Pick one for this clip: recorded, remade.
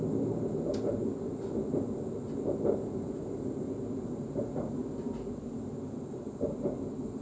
recorded